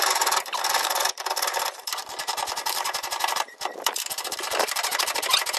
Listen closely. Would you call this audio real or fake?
fake